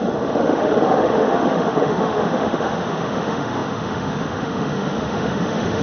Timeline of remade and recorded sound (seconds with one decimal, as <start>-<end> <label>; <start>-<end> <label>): 0.0-5.8 remade